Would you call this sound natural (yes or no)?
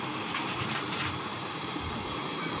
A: no